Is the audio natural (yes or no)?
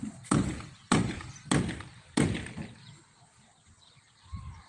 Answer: no